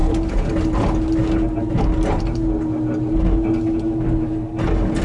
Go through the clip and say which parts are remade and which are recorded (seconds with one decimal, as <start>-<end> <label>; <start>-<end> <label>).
0.0-5.0 recorded